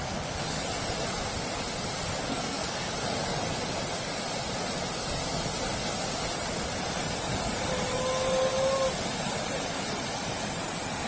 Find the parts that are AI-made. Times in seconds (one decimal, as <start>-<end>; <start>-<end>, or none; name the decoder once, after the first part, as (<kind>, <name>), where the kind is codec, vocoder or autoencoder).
2.3-2.9 (codec, SNAC)